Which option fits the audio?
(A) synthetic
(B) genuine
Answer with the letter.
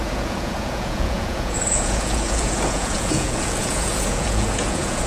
A